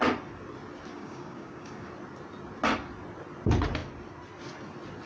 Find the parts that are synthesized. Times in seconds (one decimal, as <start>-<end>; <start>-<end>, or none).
0.9-1.9